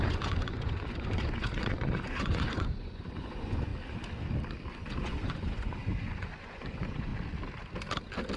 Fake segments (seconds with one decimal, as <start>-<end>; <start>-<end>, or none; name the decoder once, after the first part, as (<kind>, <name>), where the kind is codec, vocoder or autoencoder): 0.0-3.7 (vocoder, Vocos); 4.7-7.1